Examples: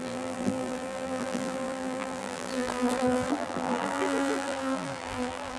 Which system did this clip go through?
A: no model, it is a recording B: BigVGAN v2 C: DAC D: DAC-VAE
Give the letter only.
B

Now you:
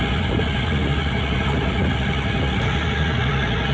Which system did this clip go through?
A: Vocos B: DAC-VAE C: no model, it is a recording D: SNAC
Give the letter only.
A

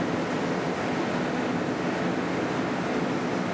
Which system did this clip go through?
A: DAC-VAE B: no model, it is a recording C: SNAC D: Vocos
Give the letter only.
B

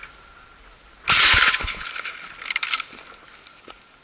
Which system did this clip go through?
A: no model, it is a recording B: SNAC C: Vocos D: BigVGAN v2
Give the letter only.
A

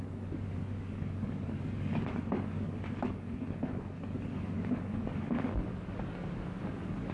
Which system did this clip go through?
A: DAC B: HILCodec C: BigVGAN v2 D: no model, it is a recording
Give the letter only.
A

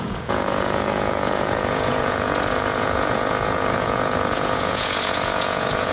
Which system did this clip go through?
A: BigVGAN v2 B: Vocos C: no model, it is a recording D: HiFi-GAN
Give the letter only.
B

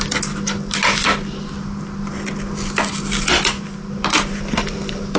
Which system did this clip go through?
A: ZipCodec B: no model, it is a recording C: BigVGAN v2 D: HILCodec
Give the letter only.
B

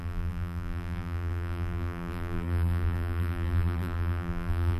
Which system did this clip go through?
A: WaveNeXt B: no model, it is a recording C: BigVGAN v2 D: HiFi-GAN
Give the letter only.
C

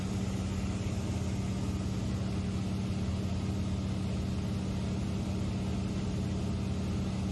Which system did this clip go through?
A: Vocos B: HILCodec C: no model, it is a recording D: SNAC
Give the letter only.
C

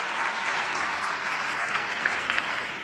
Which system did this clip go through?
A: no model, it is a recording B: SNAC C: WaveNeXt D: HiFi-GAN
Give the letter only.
B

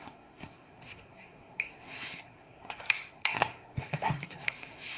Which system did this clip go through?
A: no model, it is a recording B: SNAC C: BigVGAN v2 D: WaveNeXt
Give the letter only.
B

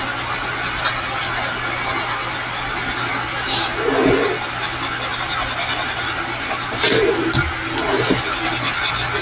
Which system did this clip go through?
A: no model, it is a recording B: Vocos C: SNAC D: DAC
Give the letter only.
A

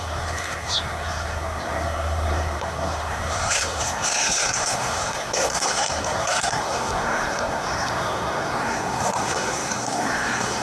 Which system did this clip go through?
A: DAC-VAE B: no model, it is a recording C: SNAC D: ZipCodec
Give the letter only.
C